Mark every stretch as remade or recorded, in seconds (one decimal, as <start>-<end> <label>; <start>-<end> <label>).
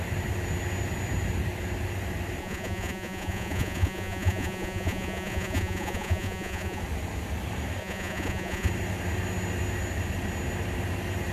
0.0-2.4 recorded; 2.4-6.8 remade; 6.8-7.8 recorded; 7.8-8.7 remade; 8.7-11.3 recorded